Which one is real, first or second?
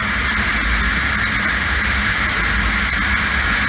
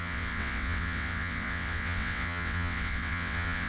first